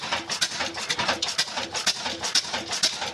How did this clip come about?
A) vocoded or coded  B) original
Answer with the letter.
B